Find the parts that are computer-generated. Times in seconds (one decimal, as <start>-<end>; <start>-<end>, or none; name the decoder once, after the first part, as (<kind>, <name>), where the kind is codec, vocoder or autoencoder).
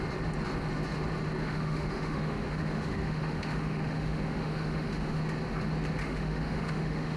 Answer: 1.4-5.2 (autoencoder, DAC-VAE); 6.0-7.2